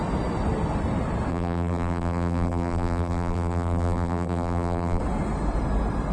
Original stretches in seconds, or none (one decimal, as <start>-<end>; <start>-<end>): 0.0-1.3; 5.0-6.1